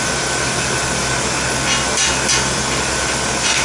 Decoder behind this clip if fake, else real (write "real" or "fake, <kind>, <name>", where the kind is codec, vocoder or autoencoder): real